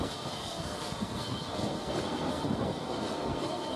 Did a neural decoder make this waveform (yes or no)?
yes